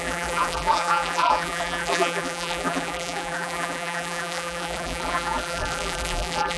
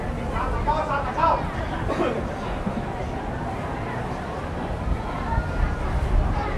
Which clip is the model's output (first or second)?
first